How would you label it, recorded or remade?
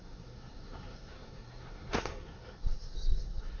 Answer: remade